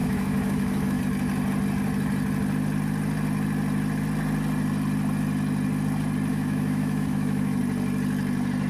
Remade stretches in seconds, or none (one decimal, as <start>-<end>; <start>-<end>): 0.0-1.0; 6.3-7.6